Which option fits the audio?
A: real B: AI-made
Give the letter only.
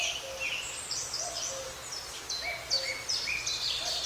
A